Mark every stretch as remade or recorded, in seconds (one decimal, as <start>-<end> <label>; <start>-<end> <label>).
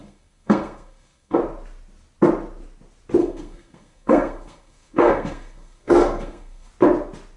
0.0-1.4 remade; 1.4-3.2 recorded; 3.2-6.7 remade; 6.7-7.4 recorded